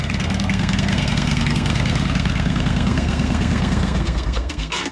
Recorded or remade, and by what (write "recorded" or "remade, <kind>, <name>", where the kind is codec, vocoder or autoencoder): remade, codec, SNAC